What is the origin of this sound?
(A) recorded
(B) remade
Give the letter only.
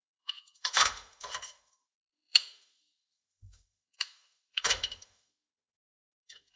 B